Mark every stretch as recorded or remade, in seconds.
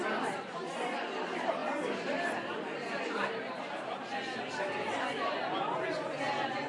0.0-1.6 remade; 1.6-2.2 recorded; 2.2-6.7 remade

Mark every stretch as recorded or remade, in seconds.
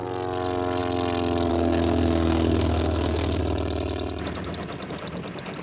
0.0-1.5 recorded; 1.5-3.4 remade; 3.4-5.6 recorded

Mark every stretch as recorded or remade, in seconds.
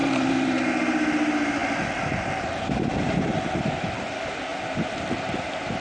0.0-0.7 remade; 0.7-1.6 recorded; 1.6-2.3 remade; 2.3-5.8 recorded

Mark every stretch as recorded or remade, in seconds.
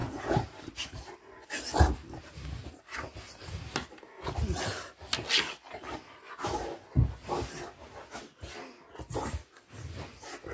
0.0-10.5 recorded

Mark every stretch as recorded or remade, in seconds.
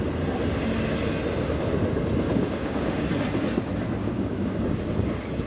0.0-2.3 recorded; 2.3-3.1 remade; 3.1-4.0 recorded; 4.0-5.0 remade; 5.0-5.5 recorded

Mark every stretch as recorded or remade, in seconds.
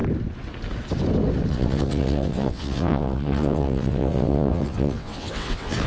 0.0-1.5 recorded; 1.5-5.9 remade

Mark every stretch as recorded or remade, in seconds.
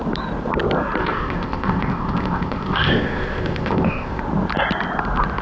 0.0-1.0 recorded; 1.0-4.2 remade; 4.2-5.4 recorded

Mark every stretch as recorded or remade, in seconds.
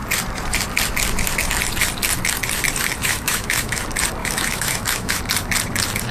0.0-3.0 recorded; 3.0-3.8 remade; 3.8-4.2 recorded; 4.2-5.2 remade; 5.2-6.1 recorded